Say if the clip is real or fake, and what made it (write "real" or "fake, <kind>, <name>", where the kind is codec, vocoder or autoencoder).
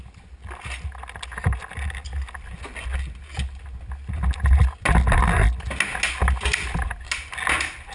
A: real